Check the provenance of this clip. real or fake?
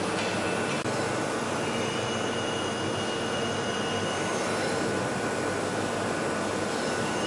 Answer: real